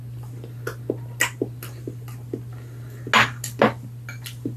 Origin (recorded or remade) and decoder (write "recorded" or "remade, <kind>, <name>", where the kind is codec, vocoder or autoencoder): recorded